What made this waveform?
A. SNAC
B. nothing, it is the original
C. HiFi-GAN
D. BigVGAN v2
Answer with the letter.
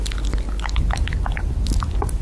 B